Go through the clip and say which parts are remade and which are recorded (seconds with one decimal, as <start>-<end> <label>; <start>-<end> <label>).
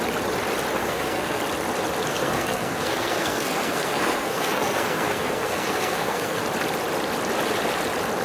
0.0-0.8 recorded; 0.8-1.4 remade; 1.4-2.1 recorded; 2.1-6.4 remade; 6.4-8.2 recorded